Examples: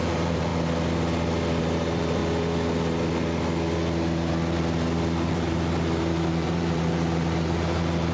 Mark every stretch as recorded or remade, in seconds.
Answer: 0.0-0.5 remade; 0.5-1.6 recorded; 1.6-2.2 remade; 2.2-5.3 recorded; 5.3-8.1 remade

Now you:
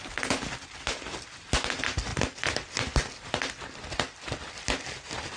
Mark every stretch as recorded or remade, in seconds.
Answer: 0.0-5.4 recorded

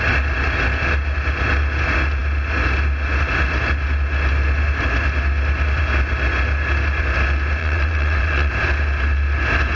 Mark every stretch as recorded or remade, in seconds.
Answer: 0.0-7.6 recorded; 7.6-8.5 remade; 8.5-9.8 recorded

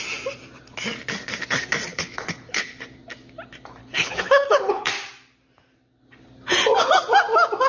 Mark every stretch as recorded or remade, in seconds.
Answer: 0.0-1.9 recorded; 1.9-2.8 remade; 2.8-3.8 recorded; 3.8-4.9 remade; 4.9-7.7 recorded

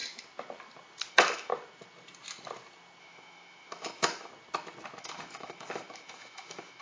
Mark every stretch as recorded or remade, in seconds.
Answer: 0.0-1.1 recorded; 1.1-1.5 remade; 1.5-3.0 recorded; 3.0-4.3 remade; 4.3-5.0 recorded; 5.0-6.8 remade

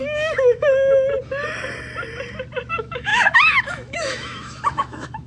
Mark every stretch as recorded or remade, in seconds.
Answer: 0.0-0.7 remade; 0.7-2.7 recorded; 2.7-5.3 remade

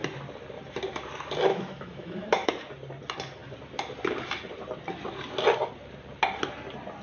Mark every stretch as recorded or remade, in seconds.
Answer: 0.0-1.5 recorded; 1.5-2.5 remade; 2.5-7.0 recorded